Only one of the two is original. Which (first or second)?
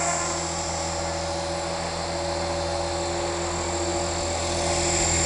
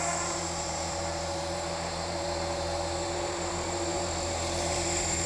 first